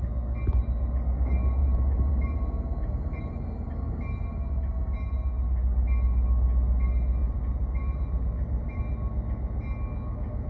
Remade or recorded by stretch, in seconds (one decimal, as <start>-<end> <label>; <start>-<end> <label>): 0.0-1.6 recorded; 1.6-3.7 remade; 3.7-7.2 recorded; 7.2-8.8 remade; 8.8-10.5 recorded

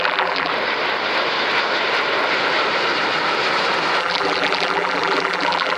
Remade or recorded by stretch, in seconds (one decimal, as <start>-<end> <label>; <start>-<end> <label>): 0.0-0.5 remade; 0.5-4.0 recorded; 4.0-5.8 remade

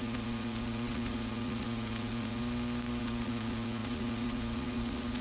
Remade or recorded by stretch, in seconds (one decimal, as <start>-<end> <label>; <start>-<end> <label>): 0.0-2.4 remade; 2.4-3.0 recorded; 3.0-5.2 remade